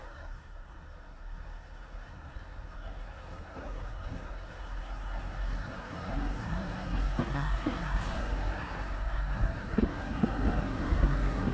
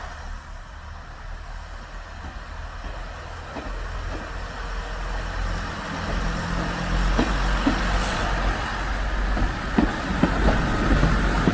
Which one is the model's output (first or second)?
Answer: first